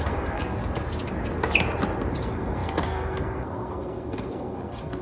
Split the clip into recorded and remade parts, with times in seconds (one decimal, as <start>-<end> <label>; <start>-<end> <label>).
0.0-0.6 remade; 0.6-2.2 recorded; 2.2-5.0 remade